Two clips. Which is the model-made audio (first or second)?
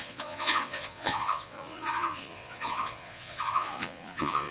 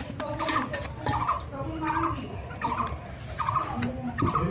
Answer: first